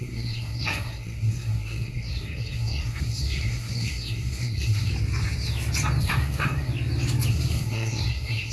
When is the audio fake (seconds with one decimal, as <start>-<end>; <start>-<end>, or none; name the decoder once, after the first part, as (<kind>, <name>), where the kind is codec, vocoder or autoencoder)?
0.0-4.9 (codec, SNAC); 6.0-6.7; 7.3-8.5